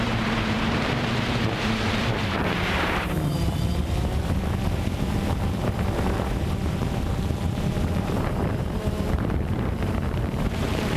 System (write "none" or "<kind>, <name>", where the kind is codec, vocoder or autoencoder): vocoder, BigVGAN v2